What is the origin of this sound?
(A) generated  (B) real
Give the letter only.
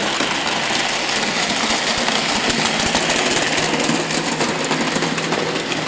B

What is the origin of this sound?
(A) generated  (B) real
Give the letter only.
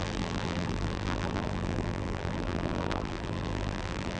A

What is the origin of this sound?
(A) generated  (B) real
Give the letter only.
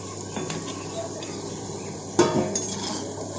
B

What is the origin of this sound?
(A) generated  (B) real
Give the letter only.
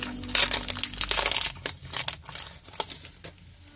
B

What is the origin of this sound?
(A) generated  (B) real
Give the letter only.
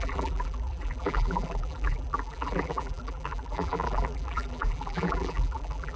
A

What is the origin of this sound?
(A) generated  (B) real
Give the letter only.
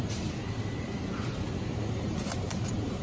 A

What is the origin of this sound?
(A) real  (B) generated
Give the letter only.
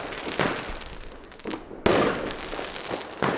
A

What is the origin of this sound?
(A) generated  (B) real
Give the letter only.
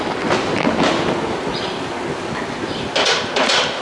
B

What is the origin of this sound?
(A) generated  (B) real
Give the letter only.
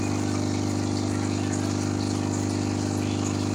B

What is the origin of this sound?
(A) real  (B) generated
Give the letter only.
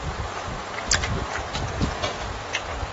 A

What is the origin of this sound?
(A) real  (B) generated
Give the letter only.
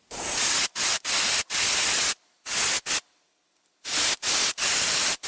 B